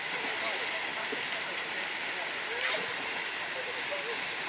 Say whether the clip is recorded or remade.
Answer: recorded